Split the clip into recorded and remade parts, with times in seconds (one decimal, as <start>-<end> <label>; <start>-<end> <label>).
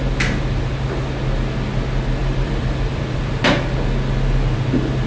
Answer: 0.0-2.2 recorded; 2.2-3.4 remade; 3.4-5.1 recorded